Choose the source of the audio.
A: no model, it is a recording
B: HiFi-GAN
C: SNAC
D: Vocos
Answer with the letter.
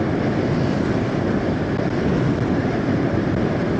A